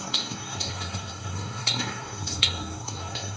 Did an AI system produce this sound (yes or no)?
yes